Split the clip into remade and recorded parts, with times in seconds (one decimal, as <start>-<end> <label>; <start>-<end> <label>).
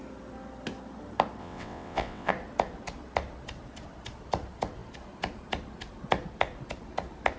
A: 0.0-1.4 recorded; 1.4-2.3 remade; 2.3-7.4 recorded